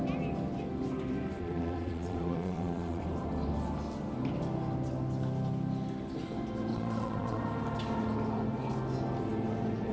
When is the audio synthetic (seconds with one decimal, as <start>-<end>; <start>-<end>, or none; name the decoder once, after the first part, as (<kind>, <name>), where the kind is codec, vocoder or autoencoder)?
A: 1.4-3.0 (vocoder, Vocos); 6.7-7.4